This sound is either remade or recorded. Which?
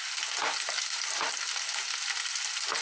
recorded